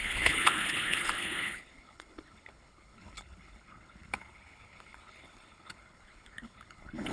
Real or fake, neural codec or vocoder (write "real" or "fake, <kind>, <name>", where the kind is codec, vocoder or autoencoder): fake, codec, HILCodec